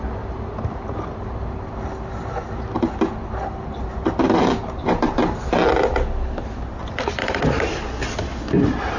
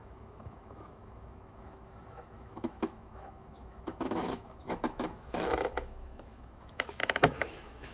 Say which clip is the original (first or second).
first